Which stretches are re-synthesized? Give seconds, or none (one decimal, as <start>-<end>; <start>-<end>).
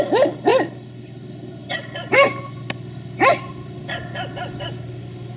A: none